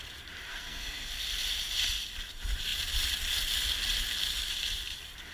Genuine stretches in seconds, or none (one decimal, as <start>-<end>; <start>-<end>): 0.0-0.5; 1.1-5.3